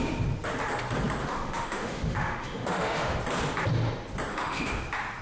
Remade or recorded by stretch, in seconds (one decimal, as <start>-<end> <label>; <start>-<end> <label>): 0.0-1.2 recorded; 1.2-3.2 remade; 3.2-4.3 recorded; 4.3-4.8 remade; 4.8-5.2 recorded